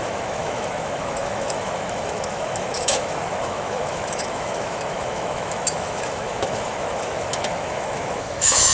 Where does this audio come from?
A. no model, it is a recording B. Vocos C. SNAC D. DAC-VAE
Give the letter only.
D